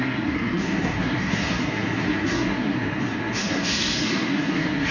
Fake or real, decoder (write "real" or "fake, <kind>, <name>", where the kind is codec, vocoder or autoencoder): fake, codec, SNAC